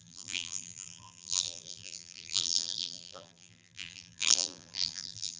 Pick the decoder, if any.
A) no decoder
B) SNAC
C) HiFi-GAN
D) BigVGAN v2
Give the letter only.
D